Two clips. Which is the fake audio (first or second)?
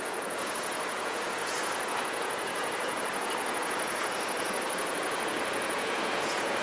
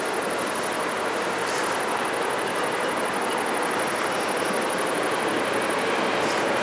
first